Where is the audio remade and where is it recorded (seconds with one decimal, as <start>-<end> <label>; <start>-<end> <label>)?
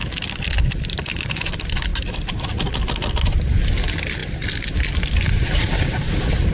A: 0.0-6.5 recorded